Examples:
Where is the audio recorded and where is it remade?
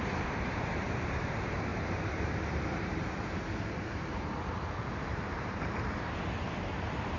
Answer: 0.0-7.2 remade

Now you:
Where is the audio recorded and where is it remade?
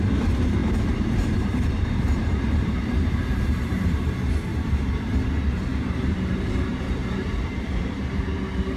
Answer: 0.0-0.6 recorded; 0.6-4.1 remade; 4.1-4.5 recorded; 4.5-5.1 remade; 5.1-5.7 recorded; 5.7-8.4 remade; 8.4-8.8 recorded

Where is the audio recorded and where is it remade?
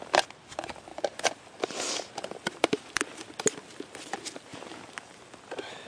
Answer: 0.0-4.5 recorded; 4.5-5.1 remade; 5.1-5.9 recorded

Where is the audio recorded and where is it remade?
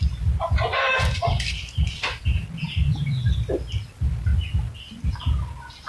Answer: 0.0-0.7 recorded; 0.7-2.2 remade; 2.2-4.3 recorded; 4.3-5.2 remade; 5.2-5.9 recorded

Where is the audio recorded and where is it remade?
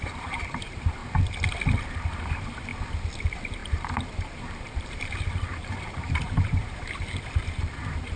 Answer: 0.0-1.0 remade; 1.0-2.2 recorded; 2.2-2.7 remade; 2.7-3.2 recorded; 3.2-8.2 remade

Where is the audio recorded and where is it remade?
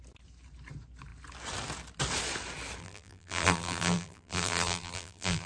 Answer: 0.0-2.8 recorded; 2.8-5.5 remade